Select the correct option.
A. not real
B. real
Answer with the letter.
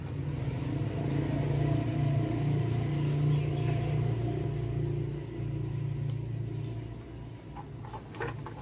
B